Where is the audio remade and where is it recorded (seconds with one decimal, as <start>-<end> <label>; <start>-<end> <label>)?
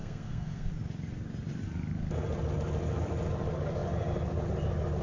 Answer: 0.0-0.7 remade; 0.7-5.0 recorded